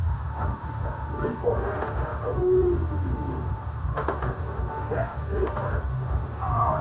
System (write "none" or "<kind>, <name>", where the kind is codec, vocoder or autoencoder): autoencoder, DAC-VAE